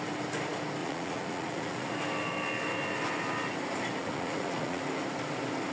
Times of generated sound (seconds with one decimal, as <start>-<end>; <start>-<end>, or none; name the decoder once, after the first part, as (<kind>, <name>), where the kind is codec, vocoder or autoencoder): 0.8-1.9 (vocoder, Vocos); 4.0-4.8